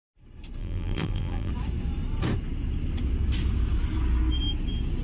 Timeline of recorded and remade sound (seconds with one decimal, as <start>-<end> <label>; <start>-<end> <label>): 0.0-0.6 recorded; 0.6-1.5 remade; 1.5-5.0 recorded